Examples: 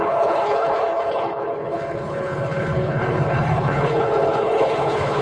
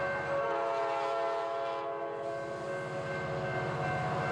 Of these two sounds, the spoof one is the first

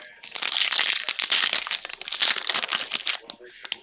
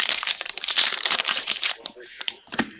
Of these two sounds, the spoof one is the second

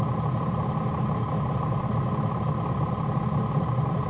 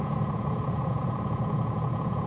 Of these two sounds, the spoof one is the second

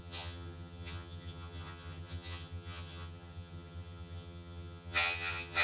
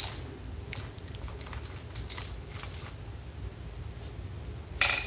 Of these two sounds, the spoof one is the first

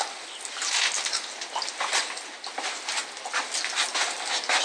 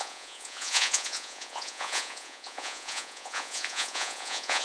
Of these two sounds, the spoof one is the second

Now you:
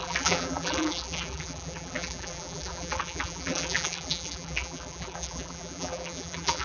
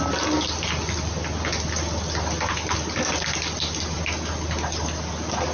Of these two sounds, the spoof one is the first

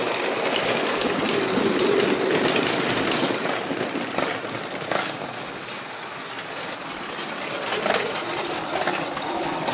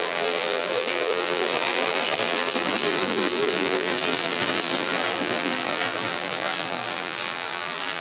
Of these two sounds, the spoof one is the second